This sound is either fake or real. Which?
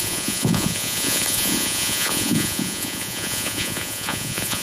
fake